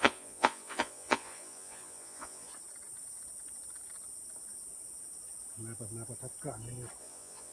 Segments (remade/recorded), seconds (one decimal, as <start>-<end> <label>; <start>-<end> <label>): 0.0-2.5 remade; 2.5-7.0 recorded; 7.0-7.5 remade